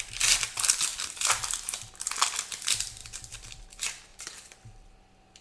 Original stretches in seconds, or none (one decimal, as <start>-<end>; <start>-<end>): 0.0-0.9; 1.9-3.0; 3.6-4.1; 4.9-5.4